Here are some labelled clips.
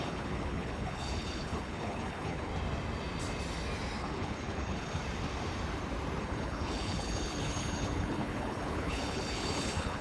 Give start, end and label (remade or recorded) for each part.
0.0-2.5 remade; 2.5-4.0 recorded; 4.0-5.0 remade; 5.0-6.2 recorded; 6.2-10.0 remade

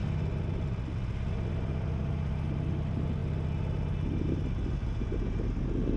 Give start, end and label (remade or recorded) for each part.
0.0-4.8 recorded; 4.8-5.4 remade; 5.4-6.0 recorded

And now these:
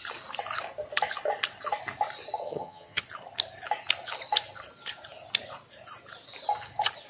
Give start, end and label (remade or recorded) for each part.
0.0-2.4 recorded; 2.4-3.0 remade; 3.0-7.1 recorded

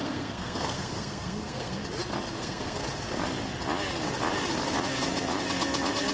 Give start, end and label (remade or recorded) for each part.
0.0-1.8 remade; 1.8-2.4 recorded; 2.4-2.8 remade; 2.8-6.1 recorded